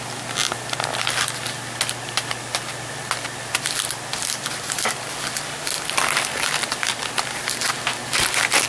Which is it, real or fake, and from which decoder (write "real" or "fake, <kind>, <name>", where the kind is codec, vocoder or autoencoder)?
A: real